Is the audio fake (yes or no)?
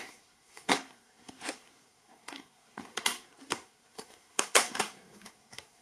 yes